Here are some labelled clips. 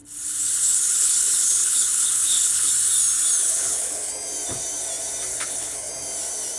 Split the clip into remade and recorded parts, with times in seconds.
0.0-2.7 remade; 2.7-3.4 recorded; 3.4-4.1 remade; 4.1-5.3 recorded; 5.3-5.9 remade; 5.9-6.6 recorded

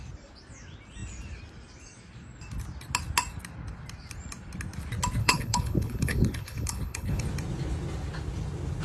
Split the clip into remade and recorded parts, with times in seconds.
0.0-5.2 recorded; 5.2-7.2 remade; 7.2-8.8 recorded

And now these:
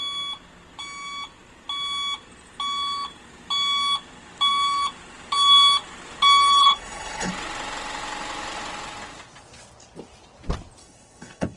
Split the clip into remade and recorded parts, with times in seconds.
0.0-6.6 recorded; 6.6-7.3 remade; 7.3-10.8 recorded; 10.8-11.6 remade

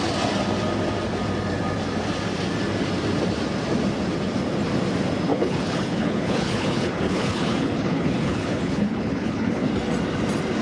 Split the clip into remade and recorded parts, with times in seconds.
0.0-5.3 recorded; 5.3-9.7 remade; 9.7-10.6 recorded

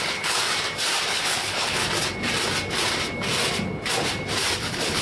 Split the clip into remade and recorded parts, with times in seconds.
0.0-0.4 remade; 0.4-1.1 recorded; 1.1-1.8 remade; 1.8-4.6 recorded; 4.6-5.0 remade

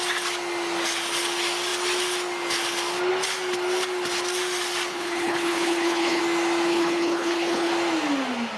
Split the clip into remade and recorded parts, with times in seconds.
0.0-4.9 recorded; 4.9-6.2 remade; 6.2-6.7 recorded; 6.7-7.7 remade; 7.7-8.6 recorded